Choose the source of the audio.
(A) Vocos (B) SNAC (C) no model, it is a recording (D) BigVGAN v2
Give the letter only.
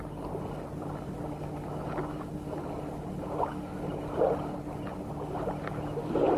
C